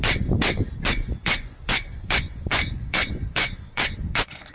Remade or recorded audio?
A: remade